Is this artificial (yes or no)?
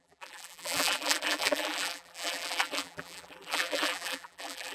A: yes